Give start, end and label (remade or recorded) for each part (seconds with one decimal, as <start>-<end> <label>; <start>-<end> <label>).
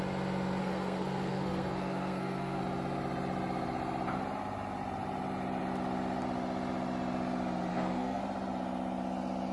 0.0-0.6 recorded; 0.6-2.6 remade; 2.6-7.7 recorded; 7.7-8.2 remade; 8.2-9.5 recorded